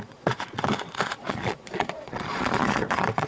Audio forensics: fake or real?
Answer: fake